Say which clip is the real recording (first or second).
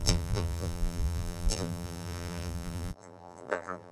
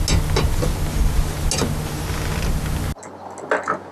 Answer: second